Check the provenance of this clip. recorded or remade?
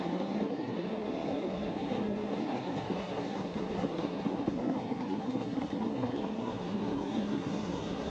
remade